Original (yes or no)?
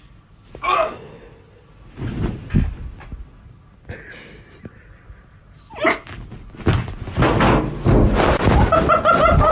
yes